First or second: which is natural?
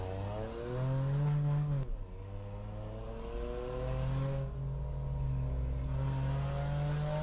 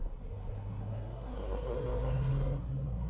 first